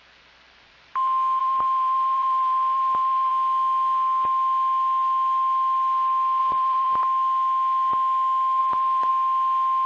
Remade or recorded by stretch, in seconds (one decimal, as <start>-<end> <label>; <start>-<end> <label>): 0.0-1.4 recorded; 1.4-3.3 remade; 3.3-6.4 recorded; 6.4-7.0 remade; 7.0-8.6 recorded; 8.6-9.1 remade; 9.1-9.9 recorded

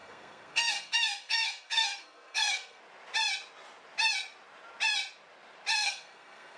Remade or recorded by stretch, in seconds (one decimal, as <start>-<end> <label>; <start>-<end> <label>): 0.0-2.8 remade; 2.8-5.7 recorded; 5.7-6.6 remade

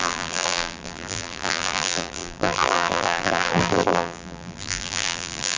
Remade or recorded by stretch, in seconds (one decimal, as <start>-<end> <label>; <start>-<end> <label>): 0.0-5.6 remade